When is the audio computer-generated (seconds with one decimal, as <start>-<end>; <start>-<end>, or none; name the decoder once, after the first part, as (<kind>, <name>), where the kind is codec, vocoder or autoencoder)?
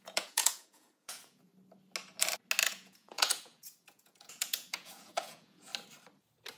0.0-1.5 (vocoder, Vocos); 2.7-5.7